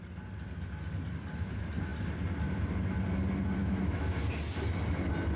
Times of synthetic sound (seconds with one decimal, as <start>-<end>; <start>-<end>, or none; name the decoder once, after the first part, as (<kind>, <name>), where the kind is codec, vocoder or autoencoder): 3.6-4.2 (autoencoder, DAC-VAE)